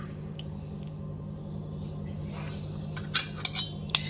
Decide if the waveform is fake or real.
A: real